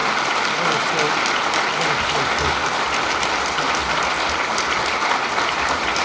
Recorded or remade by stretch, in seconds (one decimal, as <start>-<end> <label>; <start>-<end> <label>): 0.0-6.0 recorded